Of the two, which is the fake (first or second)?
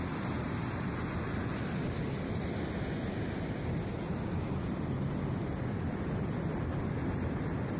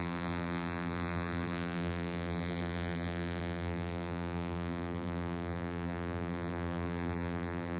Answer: second